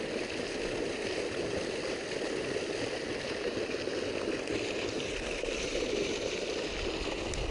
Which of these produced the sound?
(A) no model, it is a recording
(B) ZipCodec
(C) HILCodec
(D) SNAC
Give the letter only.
A